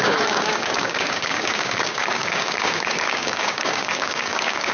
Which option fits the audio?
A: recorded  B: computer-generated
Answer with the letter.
B